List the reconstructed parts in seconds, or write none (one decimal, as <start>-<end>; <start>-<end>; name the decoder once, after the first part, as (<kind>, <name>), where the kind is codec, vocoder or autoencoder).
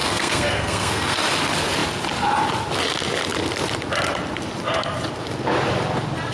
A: 0.0-1.2 (codec, SNAC)